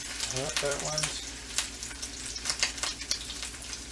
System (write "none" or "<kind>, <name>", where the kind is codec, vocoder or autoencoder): vocoder, BigVGAN v2